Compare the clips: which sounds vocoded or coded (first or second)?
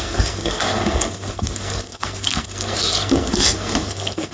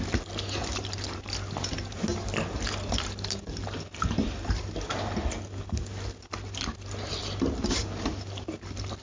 first